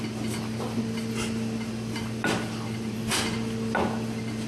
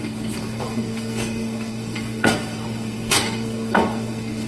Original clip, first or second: first